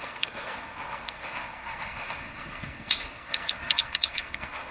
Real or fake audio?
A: fake